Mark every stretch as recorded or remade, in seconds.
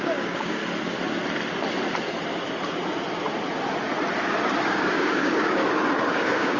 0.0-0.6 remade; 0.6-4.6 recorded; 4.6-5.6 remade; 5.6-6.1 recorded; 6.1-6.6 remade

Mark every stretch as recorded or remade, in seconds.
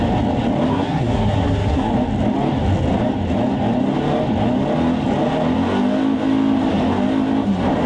0.0-0.7 recorded; 0.7-1.9 remade; 1.9-7.9 recorded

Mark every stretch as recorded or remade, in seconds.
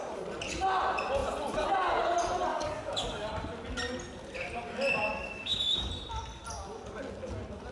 0.0-2.5 recorded; 2.5-3.3 remade; 3.3-5.1 recorded; 5.1-5.9 remade; 5.9-7.7 recorded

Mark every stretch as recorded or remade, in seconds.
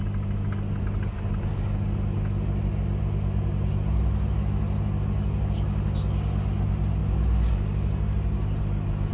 0.0-9.1 recorded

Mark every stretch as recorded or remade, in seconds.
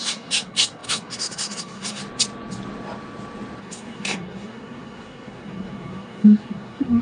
0.0-2.0 remade; 2.0-3.6 recorded; 3.6-7.0 remade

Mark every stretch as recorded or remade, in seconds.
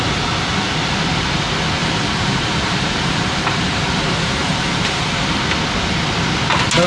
0.0-1.8 recorded; 1.8-5.4 remade; 5.4-6.9 recorded